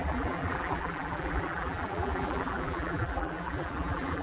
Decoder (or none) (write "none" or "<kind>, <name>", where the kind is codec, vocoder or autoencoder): vocoder, BigVGAN v2